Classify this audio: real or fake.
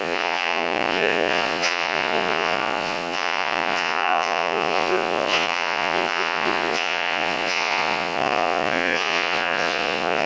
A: fake